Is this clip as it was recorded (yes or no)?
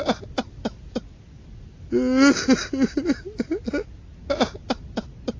yes